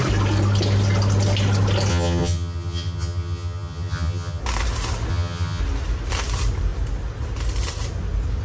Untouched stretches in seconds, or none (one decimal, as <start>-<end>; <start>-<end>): 0.0-1.9; 4.4-5.1; 5.6-8.4